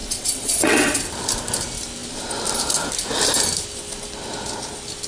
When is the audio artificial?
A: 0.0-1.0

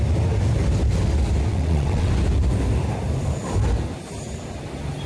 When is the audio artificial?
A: 1.5-2.1

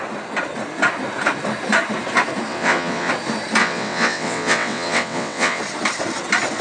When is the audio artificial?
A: 2.5-3.1; 3.6-5.6

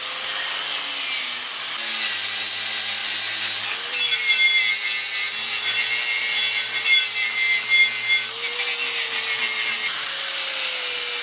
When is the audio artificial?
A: none

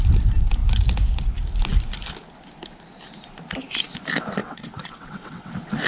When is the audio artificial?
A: 4.4-5.5

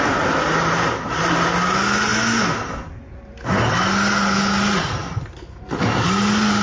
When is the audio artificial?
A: none

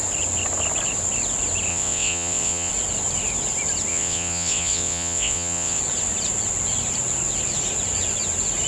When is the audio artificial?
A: 1.7-2.7; 3.9-5.8

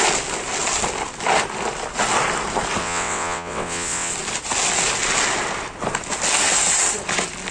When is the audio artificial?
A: 2.8-4.1